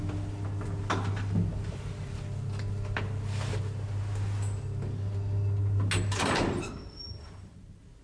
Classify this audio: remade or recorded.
recorded